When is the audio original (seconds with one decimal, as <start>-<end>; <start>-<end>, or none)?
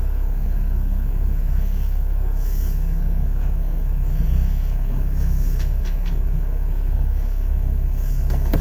none